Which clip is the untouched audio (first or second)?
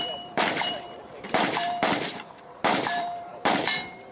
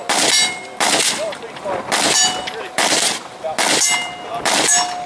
second